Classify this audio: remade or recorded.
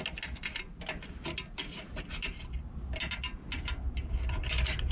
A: recorded